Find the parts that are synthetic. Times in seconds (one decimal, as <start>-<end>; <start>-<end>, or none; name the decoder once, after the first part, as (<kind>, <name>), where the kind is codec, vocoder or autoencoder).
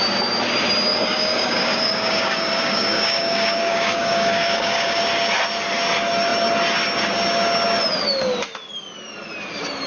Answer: 0.9-5.0 (codec, DAC)